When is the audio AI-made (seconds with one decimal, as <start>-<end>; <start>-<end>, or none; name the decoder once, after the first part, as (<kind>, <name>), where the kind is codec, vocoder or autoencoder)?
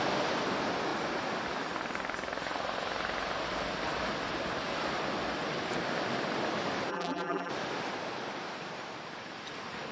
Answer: 6.9-7.5 (vocoder, BigVGAN v2)